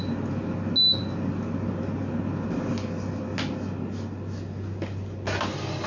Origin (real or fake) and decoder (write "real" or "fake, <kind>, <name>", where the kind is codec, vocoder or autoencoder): real